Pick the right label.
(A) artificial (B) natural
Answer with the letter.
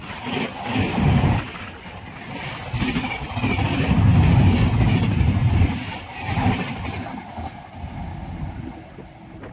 B